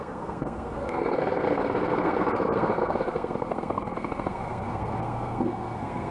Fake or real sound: fake